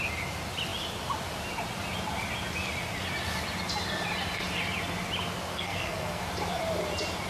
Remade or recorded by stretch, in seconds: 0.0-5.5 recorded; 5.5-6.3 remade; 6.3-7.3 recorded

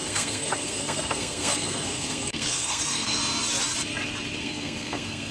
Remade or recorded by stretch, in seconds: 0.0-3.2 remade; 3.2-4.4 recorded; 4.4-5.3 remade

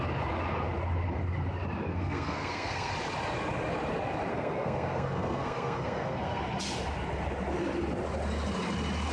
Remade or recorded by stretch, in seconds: 0.0-1.9 recorded; 1.9-2.9 remade; 2.9-4.3 recorded; 4.3-6.4 remade; 6.4-9.1 recorded

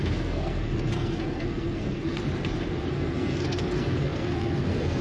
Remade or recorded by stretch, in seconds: 0.0-2.2 remade; 2.2-2.9 recorded; 2.9-5.0 remade

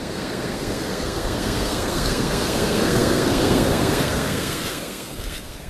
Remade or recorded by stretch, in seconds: 0.0-5.7 remade

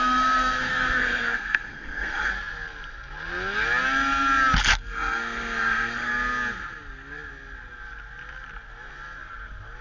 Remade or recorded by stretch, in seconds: 0.0-2.3 remade; 2.3-4.7 recorded; 4.7-6.1 remade; 6.1-9.8 recorded

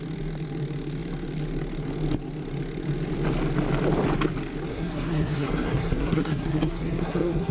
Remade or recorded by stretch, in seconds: 0.0-4.7 recorded; 4.7-7.5 remade